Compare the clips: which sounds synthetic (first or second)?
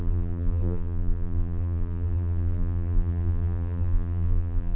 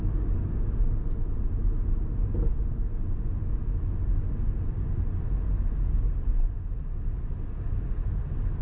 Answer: first